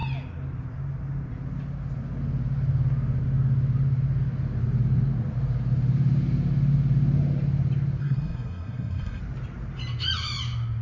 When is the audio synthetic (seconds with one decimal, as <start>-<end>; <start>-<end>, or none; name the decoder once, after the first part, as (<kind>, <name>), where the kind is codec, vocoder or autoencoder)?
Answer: 8.0-9.2 (codec, SNAC)